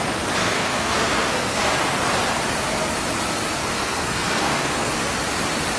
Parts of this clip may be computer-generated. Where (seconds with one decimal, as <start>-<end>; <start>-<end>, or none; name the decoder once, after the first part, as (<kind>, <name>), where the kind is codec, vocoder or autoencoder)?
0.4-1.6 (codec, SNAC); 3.6-4.9